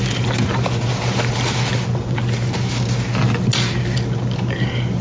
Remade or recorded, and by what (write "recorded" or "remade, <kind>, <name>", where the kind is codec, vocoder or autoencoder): recorded